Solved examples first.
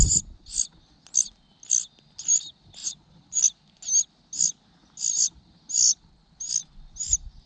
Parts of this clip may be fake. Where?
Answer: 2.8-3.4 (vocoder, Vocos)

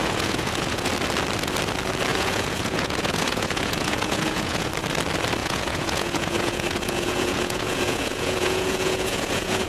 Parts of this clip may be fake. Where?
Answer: 0.0-0.9 (vocoder, Vocos); 2.1-4.7; 5.4-9.7

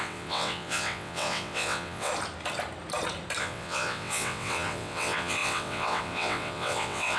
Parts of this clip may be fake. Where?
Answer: 0.0-2.1 (vocoder, WaveNeXt); 3.4-7.2